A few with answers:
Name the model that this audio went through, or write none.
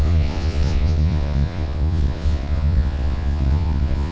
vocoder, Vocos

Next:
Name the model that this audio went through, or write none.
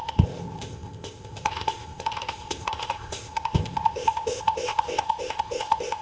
codec, ZipCodec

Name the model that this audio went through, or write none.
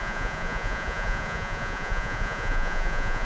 vocoder, Vocos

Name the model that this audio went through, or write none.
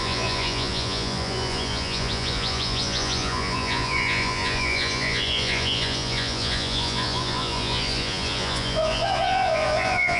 vocoder, Vocos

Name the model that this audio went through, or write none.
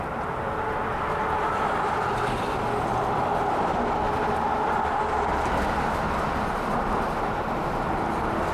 none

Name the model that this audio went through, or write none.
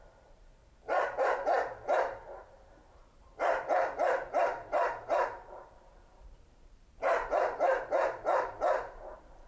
vocoder, BigVGAN v2